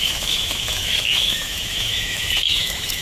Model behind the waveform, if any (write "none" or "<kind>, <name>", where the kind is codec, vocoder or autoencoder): autoencoder, DAC-VAE